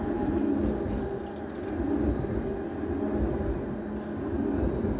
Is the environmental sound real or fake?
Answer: real